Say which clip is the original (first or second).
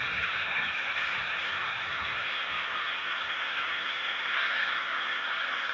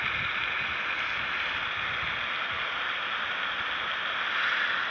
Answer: second